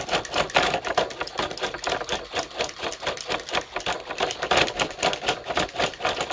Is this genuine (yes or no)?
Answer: yes